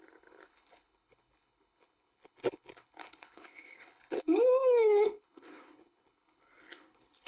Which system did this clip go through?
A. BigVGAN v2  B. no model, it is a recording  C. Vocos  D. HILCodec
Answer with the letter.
D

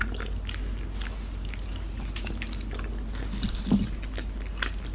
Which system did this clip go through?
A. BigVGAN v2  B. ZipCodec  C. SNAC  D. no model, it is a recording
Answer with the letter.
D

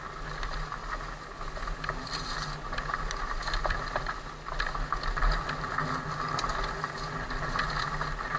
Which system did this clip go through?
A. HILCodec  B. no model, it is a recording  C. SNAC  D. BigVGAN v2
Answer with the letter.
B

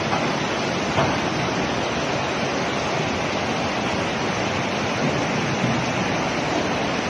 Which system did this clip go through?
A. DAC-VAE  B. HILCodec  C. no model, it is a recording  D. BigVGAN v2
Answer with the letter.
C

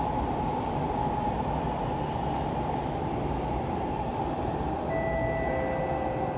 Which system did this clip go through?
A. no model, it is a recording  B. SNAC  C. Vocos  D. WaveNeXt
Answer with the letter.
A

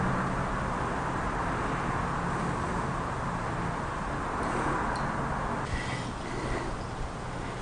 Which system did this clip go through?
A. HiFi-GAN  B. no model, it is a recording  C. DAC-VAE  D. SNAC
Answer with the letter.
B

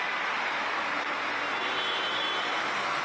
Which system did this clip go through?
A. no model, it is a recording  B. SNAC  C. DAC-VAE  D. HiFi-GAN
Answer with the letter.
A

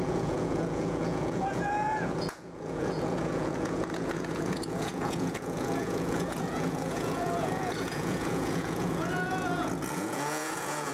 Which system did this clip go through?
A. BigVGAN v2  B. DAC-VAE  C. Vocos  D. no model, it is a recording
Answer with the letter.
C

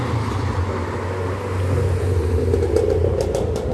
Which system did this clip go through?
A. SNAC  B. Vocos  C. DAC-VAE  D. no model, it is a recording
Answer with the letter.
D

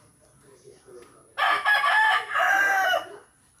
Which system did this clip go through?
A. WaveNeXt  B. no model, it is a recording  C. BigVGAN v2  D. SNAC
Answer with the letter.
B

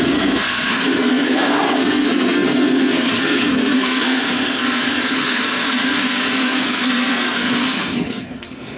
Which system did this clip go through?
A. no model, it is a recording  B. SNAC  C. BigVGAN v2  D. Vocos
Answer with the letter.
B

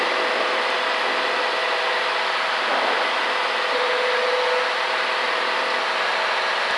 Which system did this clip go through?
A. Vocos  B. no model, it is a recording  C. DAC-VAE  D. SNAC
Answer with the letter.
B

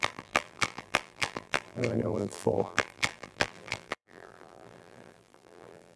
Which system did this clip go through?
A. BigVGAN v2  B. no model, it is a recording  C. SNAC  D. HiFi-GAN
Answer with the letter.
A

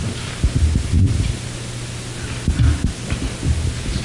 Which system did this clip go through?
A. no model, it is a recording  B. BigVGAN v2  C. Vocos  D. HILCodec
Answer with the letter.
A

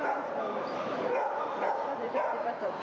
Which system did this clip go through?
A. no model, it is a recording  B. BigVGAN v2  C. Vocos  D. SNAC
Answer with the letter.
B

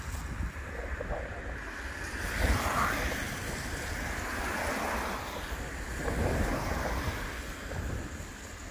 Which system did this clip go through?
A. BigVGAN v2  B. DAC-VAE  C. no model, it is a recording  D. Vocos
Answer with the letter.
C